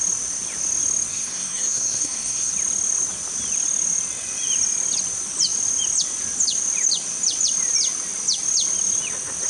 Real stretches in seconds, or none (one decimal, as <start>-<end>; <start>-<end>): 0.0-1.1; 2.5-9.5